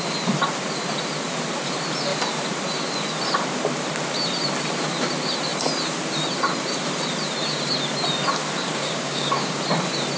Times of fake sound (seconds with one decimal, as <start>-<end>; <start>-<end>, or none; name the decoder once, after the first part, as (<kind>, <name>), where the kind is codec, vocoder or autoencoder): 8.6-9.6 (codec, DAC)